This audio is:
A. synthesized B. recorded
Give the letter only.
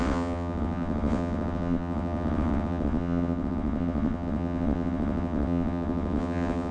A